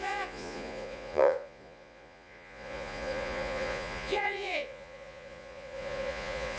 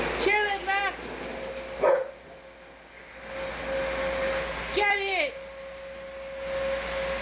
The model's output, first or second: first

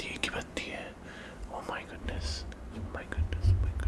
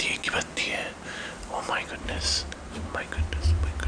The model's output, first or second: first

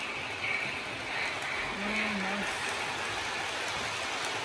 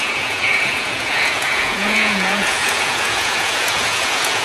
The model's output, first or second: second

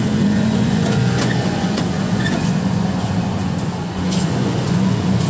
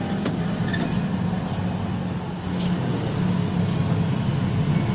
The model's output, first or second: first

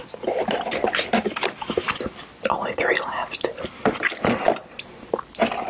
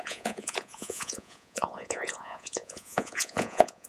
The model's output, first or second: second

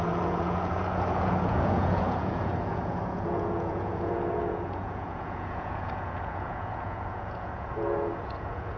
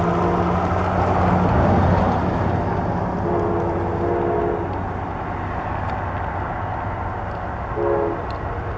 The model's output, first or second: first